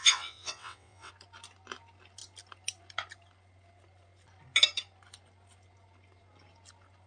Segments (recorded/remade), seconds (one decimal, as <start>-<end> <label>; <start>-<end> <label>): 0.0-1.1 remade; 1.1-7.1 recorded